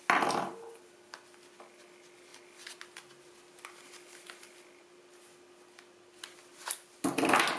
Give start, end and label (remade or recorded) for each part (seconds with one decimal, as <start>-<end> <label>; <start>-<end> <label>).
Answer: 0.0-7.6 recorded